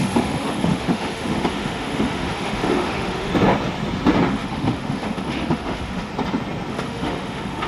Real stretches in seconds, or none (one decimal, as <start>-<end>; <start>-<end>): 3.3-4.3; 6.1-6.7